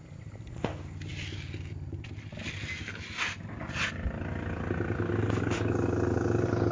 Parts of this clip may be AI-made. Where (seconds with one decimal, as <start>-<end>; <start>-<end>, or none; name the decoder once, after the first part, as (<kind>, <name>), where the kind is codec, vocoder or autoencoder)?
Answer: none